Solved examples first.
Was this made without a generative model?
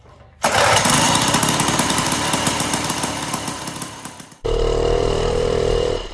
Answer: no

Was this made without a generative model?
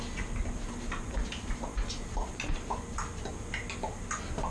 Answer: yes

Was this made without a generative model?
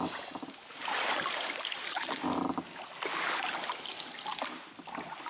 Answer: yes